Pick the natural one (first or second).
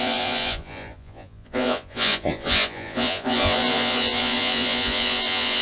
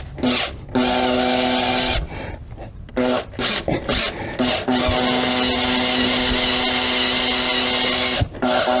second